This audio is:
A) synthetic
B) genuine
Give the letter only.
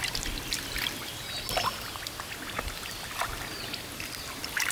B